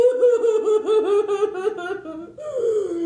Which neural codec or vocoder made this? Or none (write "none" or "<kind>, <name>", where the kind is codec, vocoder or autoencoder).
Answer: none